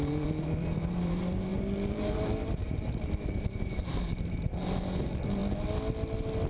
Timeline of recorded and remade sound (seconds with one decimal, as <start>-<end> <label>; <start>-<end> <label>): 0.0-5.4 remade; 5.4-6.5 recorded